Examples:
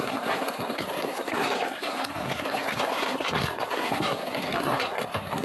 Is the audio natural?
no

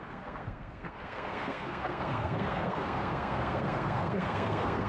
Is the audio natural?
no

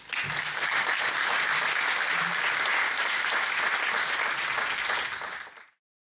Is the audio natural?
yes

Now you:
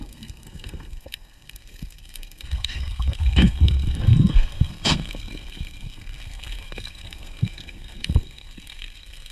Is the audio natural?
no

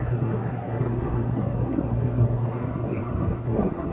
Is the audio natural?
no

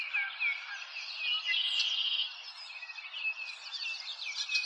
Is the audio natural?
yes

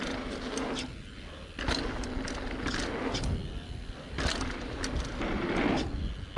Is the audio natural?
yes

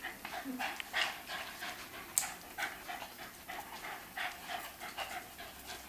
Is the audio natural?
yes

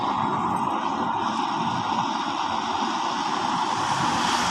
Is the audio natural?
yes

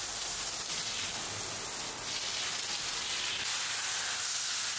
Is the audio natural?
yes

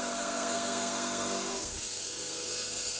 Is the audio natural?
no